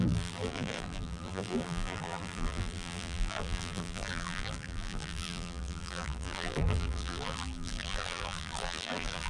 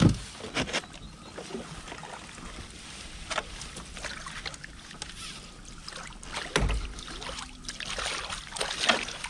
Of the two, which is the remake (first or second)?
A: first